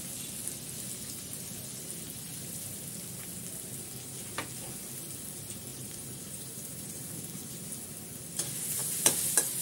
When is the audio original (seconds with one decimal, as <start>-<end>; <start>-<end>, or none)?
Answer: 0.0-5.7; 7.1-8.8